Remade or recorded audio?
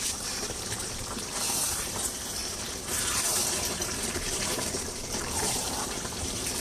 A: remade